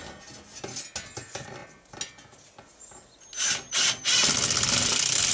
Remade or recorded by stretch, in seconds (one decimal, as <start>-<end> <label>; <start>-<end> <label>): 0.0-5.3 recorded